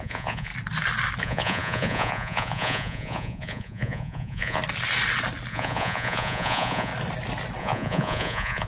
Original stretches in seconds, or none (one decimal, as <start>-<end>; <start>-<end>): 0.5-1.2; 4.6-5.5; 6.9-7.6